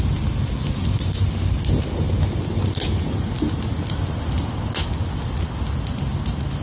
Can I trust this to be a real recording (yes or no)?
yes